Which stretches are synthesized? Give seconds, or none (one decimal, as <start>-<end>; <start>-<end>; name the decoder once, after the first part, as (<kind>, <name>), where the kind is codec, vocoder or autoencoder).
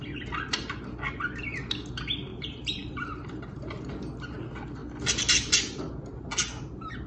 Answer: 2.3-3.9 (vocoder, BigVGAN v2)